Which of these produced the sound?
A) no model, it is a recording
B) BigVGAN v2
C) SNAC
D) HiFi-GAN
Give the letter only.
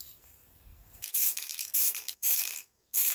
C